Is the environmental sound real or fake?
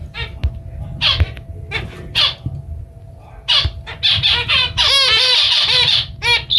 real